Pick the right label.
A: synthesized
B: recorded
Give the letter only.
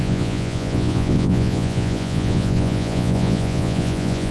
A